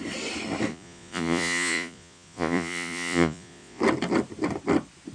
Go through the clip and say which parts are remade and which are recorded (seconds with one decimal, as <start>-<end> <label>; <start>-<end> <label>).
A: 0.0-0.7 recorded; 0.7-3.8 remade; 3.8-5.1 recorded

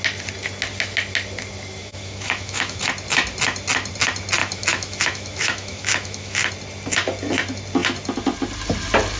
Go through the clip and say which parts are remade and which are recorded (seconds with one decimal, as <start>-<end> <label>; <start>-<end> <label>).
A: 0.0-1.8 recorded; 1.8-2.8 remade; 2.8-4.4 recorded; 4.4-6.5 remade; 6.5-9.2 recorded

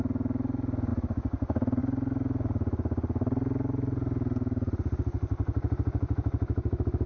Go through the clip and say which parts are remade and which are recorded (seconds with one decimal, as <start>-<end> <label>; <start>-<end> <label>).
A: 0.0-7.1 recorded

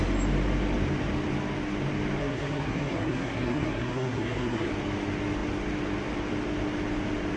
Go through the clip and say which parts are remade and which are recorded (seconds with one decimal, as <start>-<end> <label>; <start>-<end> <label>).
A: 0.0-2.2 recorded; 2.2-4.7 remade; 4.7-7.4 recorded

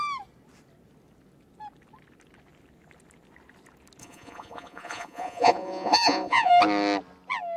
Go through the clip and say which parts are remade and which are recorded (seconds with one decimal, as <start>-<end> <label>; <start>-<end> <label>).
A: 0.0-4.0 recorded; 4.0-6.5 remade; 6.5-7.6 recorded

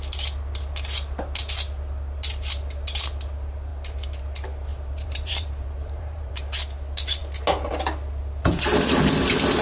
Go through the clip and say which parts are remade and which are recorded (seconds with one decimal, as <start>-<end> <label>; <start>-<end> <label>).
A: 0.0-4.7 recorded; 4.7-6.4 remade; 6.4-9.6 recorded

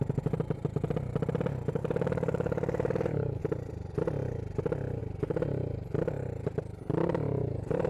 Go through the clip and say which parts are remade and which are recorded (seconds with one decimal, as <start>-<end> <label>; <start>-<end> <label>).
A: 0.0-1.8 recorded; 1.8-3.4 remade; 3.4-7.9 recorded